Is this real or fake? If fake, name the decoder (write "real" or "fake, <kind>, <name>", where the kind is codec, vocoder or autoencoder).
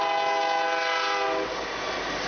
real